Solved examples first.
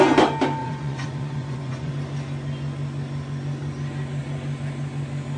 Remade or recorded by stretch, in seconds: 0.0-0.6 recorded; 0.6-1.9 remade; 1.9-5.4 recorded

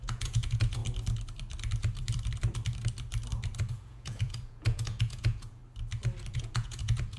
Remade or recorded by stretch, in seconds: 0.0-0.8 remade; 0.8-3.7 recorded; 3.7-5.6 remade; 5.6-6.3 recorded; 6.3-7.2 remade

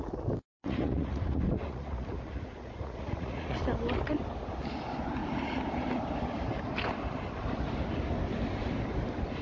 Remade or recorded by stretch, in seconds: 0.0-0.6 recorded; 0.6-3.6 remade; 3.6-9.4 recorded

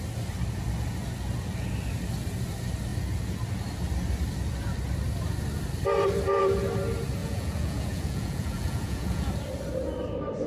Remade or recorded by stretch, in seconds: 0.0-7.2 recorded; 7.2-9.3 remade; 9.3-10.5 recorded